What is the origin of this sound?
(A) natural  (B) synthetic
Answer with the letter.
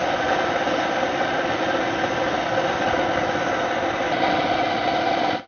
A